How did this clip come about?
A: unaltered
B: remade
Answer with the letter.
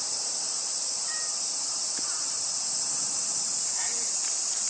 B